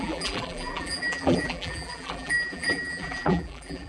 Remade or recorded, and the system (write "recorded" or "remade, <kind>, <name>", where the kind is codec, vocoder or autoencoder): remade, vocoder, BigVGAN v2